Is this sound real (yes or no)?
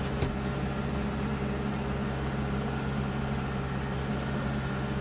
yes